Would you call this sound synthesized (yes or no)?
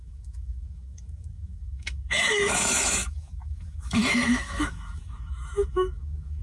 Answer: yes